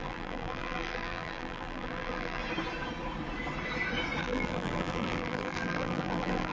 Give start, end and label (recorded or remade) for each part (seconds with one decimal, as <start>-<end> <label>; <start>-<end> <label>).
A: 0.0-2.4 remade; 2.4-4.2 recorded; 4.2-6.5 remade

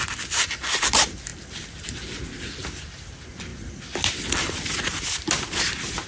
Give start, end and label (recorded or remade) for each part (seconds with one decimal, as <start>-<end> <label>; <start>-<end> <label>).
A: 0.0-6.1 recorded